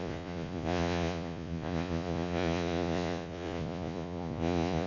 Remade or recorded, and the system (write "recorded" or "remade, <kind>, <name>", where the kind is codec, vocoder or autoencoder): remade, vocoder, Vocos